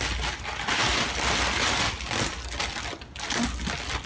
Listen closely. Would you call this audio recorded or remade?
recorded